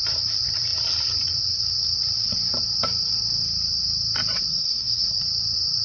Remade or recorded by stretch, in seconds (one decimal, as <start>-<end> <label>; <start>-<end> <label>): 0.0-4.5 recorded; 4.5-5.2 remade; 5.2-5.8 recorded